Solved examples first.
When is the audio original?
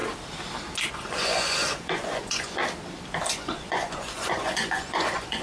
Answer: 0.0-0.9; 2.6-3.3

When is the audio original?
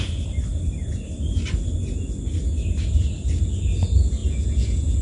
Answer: 0.0-4.2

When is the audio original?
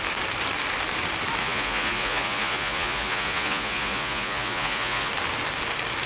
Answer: 0.0-1.4; 5.1-6.1